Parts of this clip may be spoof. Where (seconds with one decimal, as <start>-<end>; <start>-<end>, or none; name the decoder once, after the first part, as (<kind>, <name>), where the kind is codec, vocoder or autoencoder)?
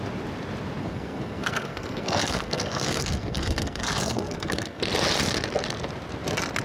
0.8-4.8 (codec, SNAC)